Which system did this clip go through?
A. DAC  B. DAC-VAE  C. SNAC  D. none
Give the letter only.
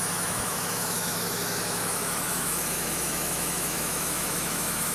B